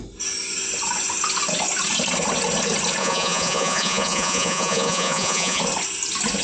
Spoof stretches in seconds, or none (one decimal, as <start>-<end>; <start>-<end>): 3.0-5.6